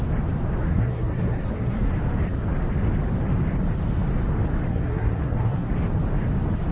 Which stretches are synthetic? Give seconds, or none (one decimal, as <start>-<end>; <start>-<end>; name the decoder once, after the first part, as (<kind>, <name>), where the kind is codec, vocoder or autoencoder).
0.7-1.9 (codec, SNAC); 4.7-5.7